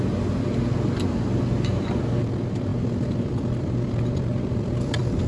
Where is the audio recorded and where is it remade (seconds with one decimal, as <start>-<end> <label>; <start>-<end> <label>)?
0.0-2.7 recorded; 2.7-4.7 remade; 4.7-5.3 recorded